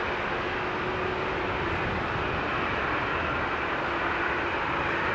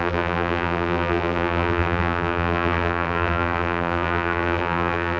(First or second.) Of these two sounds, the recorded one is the first